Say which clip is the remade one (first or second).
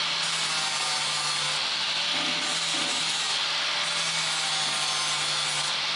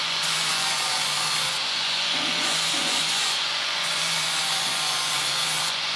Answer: second